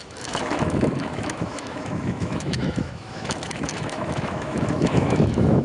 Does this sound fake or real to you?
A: fake